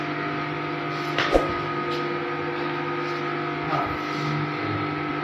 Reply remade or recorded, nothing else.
recorded